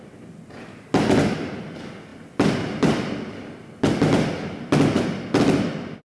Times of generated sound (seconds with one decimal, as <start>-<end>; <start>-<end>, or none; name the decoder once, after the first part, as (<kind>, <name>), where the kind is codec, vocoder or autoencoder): none